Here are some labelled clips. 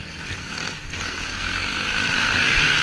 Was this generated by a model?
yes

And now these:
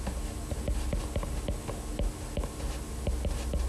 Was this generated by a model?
no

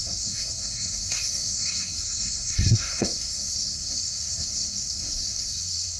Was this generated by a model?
yes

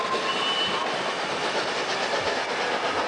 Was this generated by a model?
no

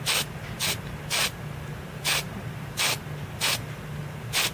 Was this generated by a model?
no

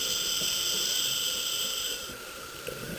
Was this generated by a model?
no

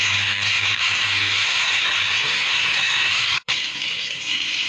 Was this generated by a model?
yes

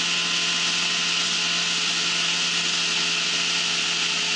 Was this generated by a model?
no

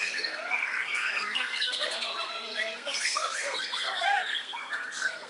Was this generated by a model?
yes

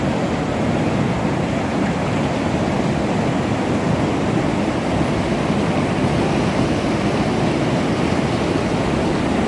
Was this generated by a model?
no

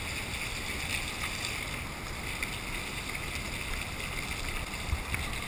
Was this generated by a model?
no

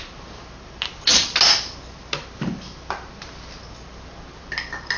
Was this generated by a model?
no